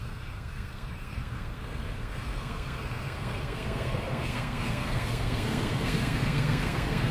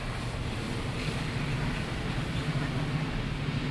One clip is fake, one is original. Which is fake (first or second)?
first